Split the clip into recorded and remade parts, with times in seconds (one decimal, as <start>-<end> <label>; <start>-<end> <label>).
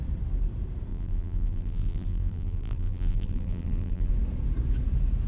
0.0-0.9 recorded; 0.9-4.1 remade; 4.1-5.3 recorded